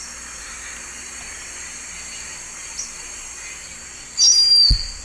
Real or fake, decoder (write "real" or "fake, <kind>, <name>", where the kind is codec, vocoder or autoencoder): real